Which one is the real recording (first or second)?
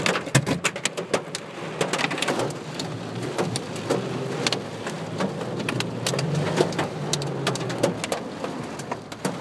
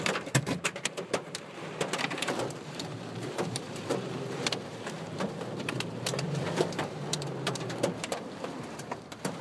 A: first